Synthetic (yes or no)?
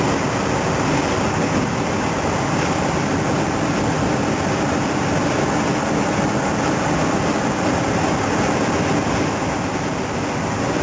no